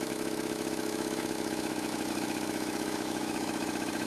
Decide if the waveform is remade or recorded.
remade